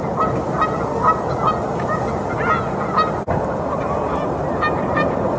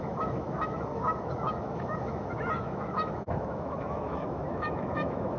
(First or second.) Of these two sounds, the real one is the first